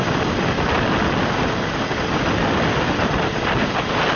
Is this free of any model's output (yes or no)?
yes